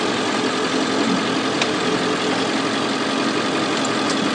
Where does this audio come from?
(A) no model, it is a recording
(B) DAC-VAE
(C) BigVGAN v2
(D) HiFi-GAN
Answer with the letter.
A